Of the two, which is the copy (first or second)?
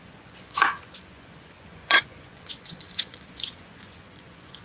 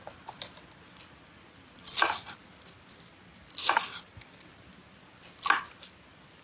first